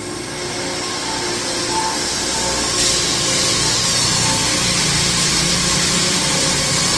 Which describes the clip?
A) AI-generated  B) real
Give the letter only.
B